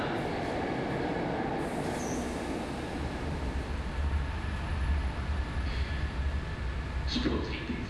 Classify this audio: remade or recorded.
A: recorded